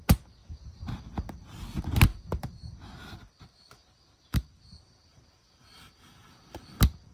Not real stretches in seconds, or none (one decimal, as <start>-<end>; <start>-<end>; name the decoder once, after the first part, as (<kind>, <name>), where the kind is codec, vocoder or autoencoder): 2.1-6.4 (vocoder, BigVGAN v2)